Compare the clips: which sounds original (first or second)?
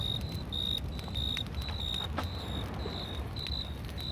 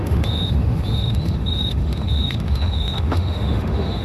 first